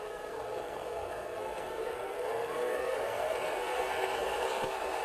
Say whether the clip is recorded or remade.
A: remade